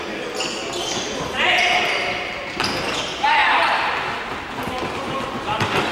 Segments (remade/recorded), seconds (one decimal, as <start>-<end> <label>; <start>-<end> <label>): 0.0-5.9 recorded